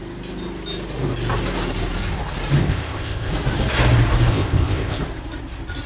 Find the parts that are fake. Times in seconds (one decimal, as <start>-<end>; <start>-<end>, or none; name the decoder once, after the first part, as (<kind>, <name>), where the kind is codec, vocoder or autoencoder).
2.6-3.3 (codec, ZipCodec); 4.3-5.0